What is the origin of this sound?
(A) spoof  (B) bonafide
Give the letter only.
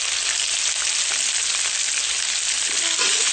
B